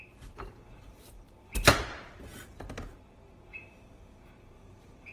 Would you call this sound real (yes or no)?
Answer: yes